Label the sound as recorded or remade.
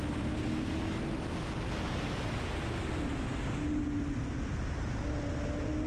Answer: recorded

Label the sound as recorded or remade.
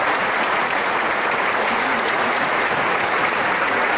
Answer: remade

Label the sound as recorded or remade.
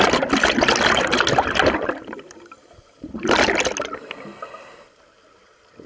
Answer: recorded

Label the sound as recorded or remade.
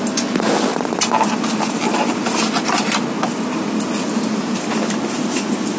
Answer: recorded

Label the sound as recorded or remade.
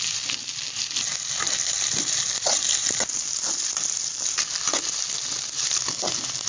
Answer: recorded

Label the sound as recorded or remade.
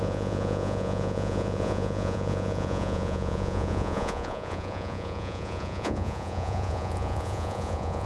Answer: remade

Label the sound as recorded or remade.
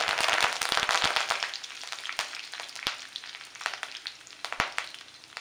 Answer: recorded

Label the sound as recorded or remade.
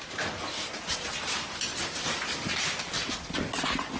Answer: recorded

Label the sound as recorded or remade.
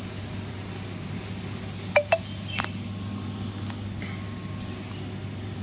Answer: recorded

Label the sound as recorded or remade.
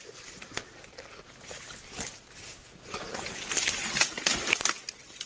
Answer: recorded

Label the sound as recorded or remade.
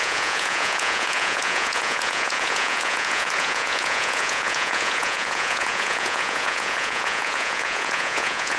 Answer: remade